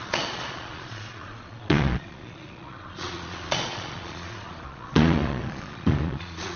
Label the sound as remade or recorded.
remade